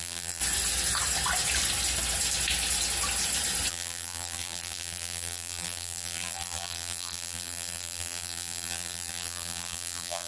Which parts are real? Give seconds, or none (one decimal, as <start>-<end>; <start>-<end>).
0.4-3.7